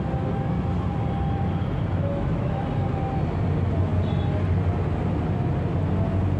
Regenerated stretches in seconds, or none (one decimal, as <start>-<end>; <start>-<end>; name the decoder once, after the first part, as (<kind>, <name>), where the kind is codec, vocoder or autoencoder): 1.9-2.6 (autoencoder, DAC-VAE)